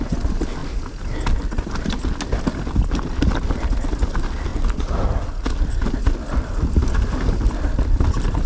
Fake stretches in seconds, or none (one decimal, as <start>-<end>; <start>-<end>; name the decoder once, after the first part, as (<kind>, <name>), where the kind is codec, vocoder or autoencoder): none